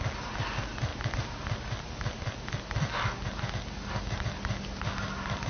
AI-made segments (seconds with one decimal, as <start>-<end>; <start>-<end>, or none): none